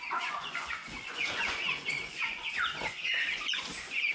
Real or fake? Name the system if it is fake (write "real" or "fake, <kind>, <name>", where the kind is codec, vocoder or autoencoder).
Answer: fake, vocoder, Vocos